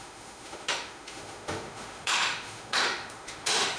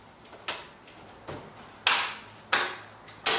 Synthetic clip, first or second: first